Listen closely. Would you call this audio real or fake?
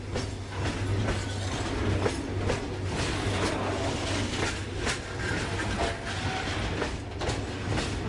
real